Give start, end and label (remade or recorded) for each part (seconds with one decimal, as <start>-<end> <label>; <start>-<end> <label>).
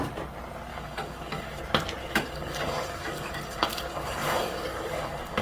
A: 0.0-0.7 recorded; 0.7-1.6 remade; 1.6-2.0 recorded; 2.0-5.4 remade